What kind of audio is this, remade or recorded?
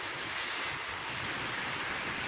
recorded